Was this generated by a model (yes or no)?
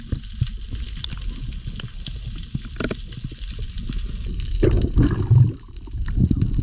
no